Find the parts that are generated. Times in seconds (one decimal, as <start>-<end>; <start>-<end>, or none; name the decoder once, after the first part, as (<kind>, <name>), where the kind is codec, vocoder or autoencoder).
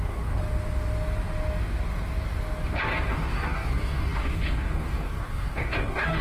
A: 0.0-0.4 (codec, DAC); 3.1-6.2